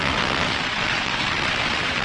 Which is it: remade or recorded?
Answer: remade